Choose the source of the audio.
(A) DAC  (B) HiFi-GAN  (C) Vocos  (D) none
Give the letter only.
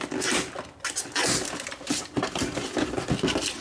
D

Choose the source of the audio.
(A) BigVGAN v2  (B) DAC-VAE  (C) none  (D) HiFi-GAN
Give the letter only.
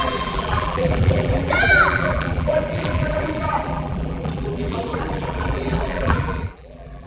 A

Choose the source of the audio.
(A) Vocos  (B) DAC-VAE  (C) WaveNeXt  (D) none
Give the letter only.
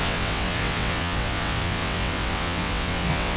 C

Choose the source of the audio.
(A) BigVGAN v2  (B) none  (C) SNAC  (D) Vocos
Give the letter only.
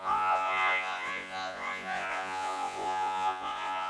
D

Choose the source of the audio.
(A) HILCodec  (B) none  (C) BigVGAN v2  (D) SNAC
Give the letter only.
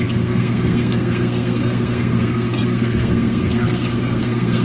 D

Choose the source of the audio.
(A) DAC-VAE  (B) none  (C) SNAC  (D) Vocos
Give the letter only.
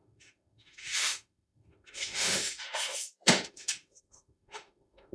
A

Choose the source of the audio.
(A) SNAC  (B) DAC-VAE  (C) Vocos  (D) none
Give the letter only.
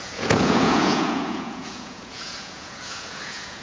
C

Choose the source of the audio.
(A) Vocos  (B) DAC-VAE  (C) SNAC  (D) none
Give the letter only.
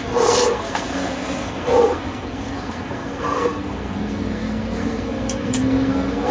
C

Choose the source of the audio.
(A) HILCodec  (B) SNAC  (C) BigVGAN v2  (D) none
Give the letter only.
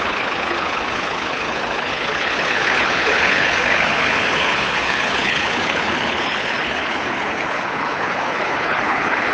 A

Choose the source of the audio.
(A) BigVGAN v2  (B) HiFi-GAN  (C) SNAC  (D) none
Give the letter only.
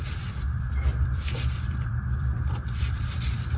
A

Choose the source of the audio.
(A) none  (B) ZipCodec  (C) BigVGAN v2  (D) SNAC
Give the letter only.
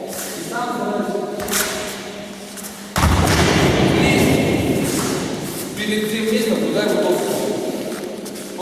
C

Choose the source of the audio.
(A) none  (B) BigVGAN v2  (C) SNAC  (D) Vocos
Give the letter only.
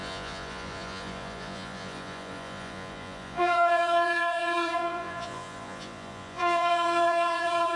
D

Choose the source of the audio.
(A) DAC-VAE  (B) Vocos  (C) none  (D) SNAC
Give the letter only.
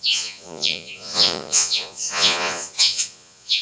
B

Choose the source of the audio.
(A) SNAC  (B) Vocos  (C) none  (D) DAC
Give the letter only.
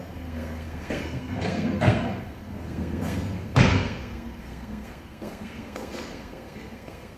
A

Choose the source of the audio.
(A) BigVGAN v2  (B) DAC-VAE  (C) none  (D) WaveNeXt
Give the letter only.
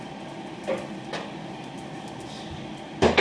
C